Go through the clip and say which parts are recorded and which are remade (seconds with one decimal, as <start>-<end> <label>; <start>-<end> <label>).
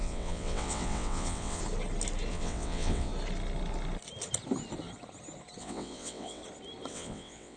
0.0-1.6 remade; 1.6-2.3 recorded; 2.3-3.1 remade; 3.1-5.6 recorded; 5.6-6.4 remade; 6.4-6.9 recorded; 6.9-7.6 remade